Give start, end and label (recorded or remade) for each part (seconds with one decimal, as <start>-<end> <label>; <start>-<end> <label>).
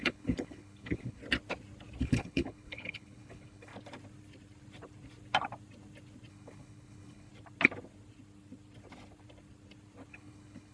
0.0-1.2 remade; 1.2-2.0 recorded; 2.0-3.7 remade; 3.7-6.3 recorded; 6.3-7.3 remade; 7.3-10.1 recorded; 10.1-10.7 remade